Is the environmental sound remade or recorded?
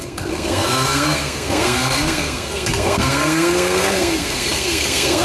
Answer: remade